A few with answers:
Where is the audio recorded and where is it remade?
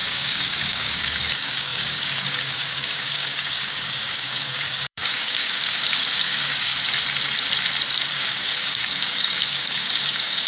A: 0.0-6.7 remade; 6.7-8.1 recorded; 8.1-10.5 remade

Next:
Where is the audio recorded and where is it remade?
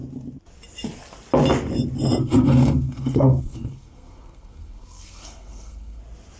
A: 0.0-2.2 recorded; 2.2-6.0 remade; 6.0-6.4 recorded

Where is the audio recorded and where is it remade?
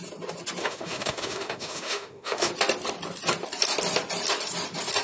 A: 0.0-0.6 recorded; 0.6-2.5 remade; 2.5-5.0 recorded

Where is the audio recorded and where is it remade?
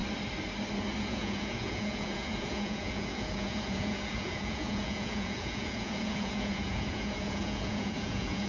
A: 0.0-1.0 recorded; 1.0-8.5 remade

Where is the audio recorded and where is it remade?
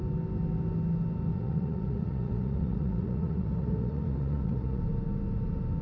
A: 0.0-1.3 recorded; 1.3-4.8 remade; 4.8-5.8 recorded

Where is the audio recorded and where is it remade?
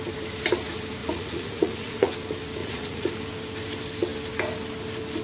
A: 0.0-1.0 recorded; 1.0-2.1 remade; 2.1-2.6 recorded; 2.6-3.1 remade; 3.1-5.2 recorded